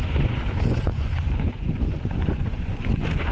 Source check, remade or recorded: remade